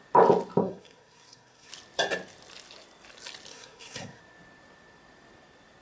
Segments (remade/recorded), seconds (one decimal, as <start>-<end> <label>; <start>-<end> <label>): 0.0-0.6 recorded; 0.6-1.7 remade; 1.7-3.5 recorded; 3.5-4.2 remade; 4.2-5.8 recorded